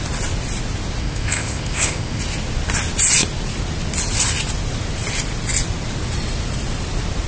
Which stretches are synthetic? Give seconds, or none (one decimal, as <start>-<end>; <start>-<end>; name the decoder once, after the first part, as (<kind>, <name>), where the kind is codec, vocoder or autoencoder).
1.0-2.2 (codec, ZipCodec)